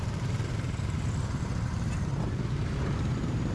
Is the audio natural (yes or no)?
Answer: no